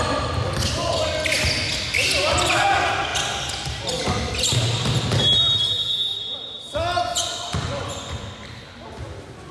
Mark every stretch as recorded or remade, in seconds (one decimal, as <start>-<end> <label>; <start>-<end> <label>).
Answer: 0.0-7.1 recorded; 7.1-8.2 remade; 8.2-9.5 recorded